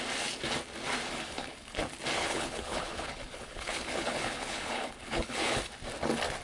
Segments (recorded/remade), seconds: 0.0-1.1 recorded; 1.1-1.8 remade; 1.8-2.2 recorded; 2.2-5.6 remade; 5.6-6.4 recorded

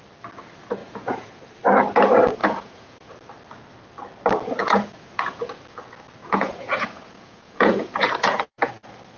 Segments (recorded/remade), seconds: 0.0-0.8 recorded; 0.8-1.4 remade; 1.4-2.4 recorded; 2.4-3.1 remade; 3.1-4.6 recorded; 4.6-5.4 remade; 5.4-6.2 recorded; 6.2-8.7 remade; 8.7-9.2 recorded